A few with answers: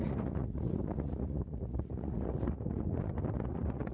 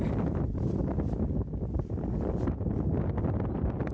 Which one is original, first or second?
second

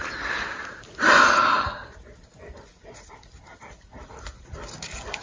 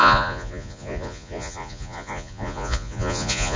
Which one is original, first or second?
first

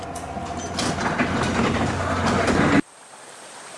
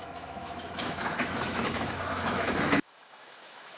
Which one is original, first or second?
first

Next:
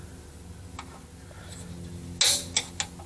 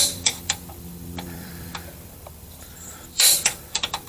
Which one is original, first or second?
first